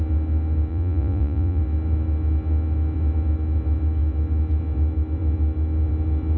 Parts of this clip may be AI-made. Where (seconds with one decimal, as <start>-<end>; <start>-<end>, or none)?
0.7-1.6